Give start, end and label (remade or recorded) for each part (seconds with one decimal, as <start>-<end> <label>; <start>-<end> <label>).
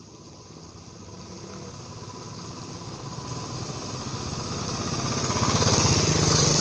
0.0-6.6 recorded